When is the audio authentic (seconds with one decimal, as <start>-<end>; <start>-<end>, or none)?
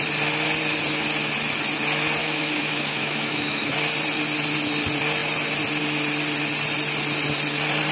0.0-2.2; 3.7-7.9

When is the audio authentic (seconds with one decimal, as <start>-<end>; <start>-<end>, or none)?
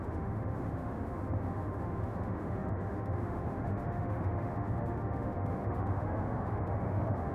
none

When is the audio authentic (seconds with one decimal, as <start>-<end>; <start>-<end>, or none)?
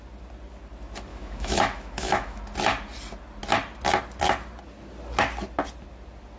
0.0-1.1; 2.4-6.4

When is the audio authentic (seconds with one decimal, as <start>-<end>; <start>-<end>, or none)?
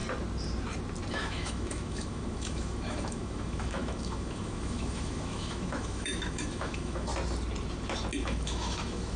0.0-1.1; 7.1-8.2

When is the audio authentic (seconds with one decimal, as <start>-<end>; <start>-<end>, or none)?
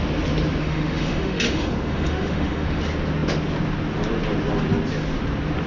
0.0-0.6; 2.8-5.7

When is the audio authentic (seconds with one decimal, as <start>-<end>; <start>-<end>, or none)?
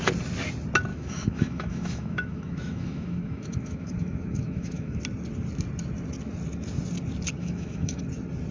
0.0-0.9; 5.0-7.4; 8.0-8.5